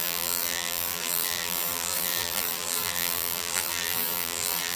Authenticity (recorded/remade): remade